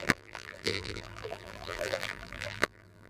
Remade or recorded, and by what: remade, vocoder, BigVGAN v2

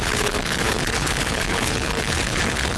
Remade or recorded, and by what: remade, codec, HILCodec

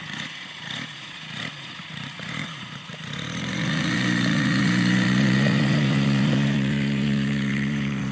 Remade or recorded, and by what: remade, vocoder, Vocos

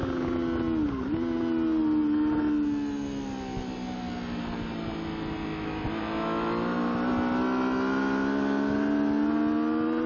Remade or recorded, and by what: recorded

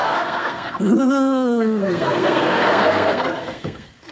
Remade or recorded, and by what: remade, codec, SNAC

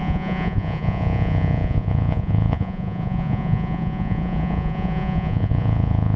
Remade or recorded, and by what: remade, vocoder, Vocos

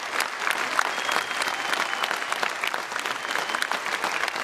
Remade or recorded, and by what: recorded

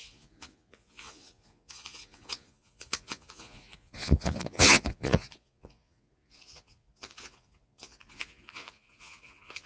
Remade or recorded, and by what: remade, vocoder, Vocos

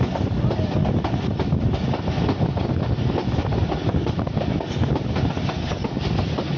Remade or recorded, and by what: recorded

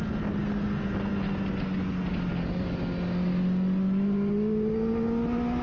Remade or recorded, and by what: recorded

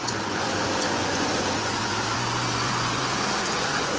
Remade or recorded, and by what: remade, vocoder, Vocos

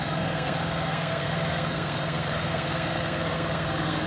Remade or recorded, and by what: remade, codec, SNAC